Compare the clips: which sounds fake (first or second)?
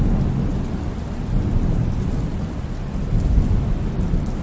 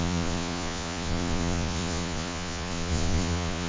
second